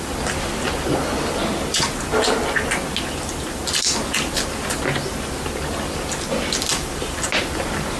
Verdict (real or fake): real